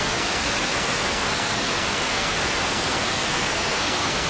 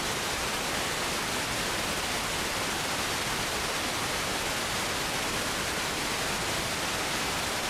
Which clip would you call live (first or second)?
second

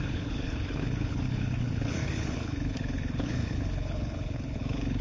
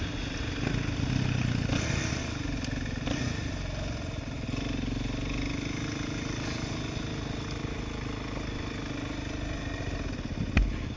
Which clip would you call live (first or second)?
second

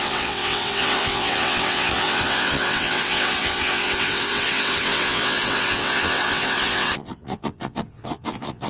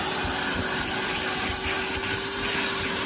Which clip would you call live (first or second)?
second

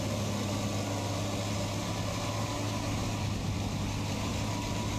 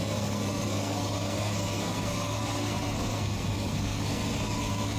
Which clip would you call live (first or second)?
first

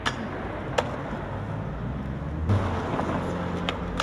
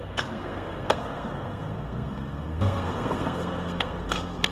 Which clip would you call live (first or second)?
first